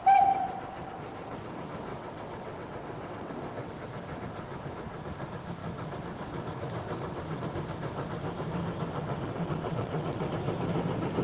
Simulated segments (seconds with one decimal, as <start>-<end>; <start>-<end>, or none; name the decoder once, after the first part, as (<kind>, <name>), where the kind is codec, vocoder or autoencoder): 1.9-3.7 (vocoder, WaveNeXt); 8.9-10.3